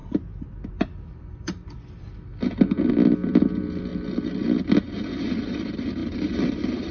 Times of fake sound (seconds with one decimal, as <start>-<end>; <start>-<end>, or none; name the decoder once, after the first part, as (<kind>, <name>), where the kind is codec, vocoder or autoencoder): 0.7-2.3 (vocoder, BigVGAN v2); 2.9-3.9; 5.1-6.9